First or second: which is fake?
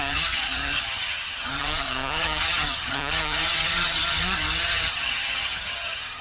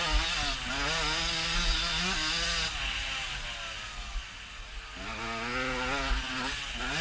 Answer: first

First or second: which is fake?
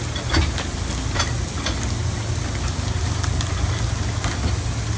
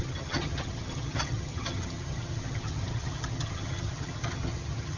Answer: second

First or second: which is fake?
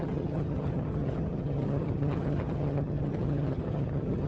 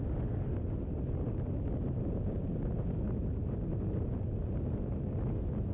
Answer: first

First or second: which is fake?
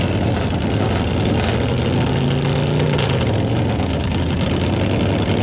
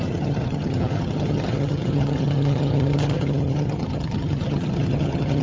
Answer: second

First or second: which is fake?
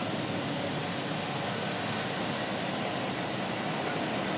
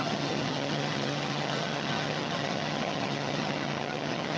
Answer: second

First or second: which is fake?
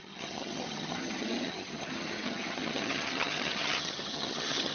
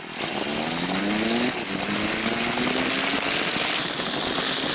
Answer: first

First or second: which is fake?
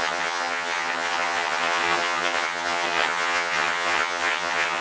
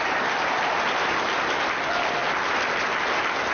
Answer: first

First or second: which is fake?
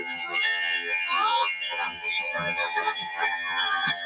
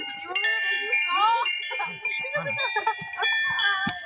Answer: first